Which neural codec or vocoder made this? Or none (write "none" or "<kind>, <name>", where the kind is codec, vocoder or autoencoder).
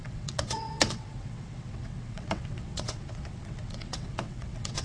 vocoder, WaveNeXt